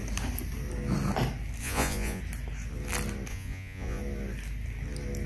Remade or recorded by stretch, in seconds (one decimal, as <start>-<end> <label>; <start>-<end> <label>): 0.0-1.6 recorded; 1.6-2.2 remade; 2.2-3.3 recorded; 3.3-4.0 remade; 4.0-5.3 recorded